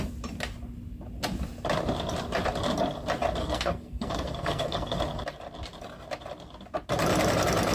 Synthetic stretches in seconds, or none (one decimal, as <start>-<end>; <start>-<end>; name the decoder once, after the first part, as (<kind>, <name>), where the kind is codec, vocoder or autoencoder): 3.4-5.0 (codec, SNAC)

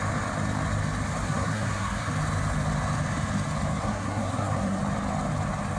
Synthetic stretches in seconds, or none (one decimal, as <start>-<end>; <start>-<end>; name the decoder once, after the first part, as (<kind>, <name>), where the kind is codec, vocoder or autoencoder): 1.2-2.1 (codec, SNAC); 3.7-4.8

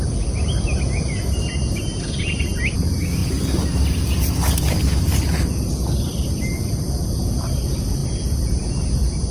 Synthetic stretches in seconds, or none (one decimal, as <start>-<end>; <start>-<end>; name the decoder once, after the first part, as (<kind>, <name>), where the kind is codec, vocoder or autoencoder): none

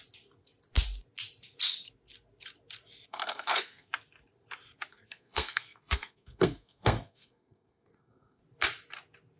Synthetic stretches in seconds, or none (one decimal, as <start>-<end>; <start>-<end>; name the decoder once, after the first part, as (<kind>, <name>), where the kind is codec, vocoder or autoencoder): 3.1-3.9 (codec, SNAC); 4.9-8.4

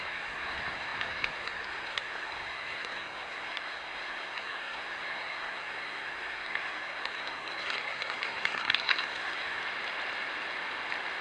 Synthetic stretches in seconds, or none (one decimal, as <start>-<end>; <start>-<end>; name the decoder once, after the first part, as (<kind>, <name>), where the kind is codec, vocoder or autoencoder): 0.0-9.6 (codec, SNAC)